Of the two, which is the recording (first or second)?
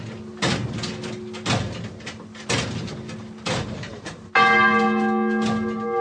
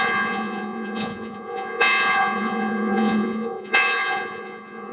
first